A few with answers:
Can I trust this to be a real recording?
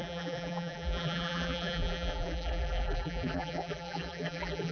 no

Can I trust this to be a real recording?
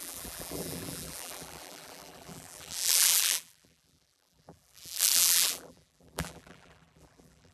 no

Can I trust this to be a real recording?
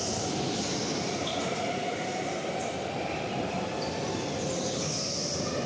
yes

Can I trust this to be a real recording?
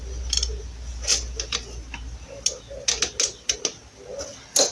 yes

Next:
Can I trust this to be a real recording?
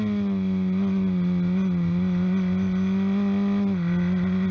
yes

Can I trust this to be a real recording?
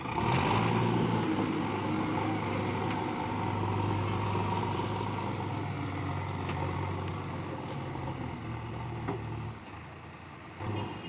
yes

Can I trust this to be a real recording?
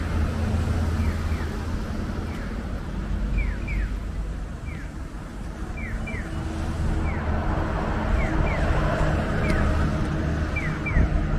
yes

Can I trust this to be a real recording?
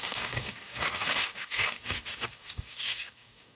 no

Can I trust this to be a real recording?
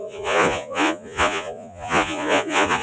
no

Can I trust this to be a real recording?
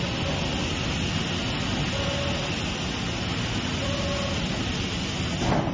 yes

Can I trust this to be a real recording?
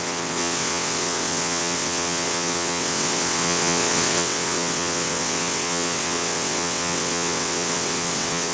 no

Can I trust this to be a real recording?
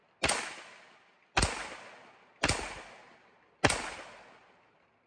yes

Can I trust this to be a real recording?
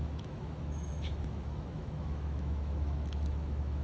no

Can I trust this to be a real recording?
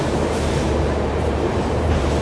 no